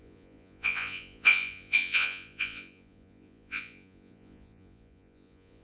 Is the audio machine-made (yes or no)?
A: yes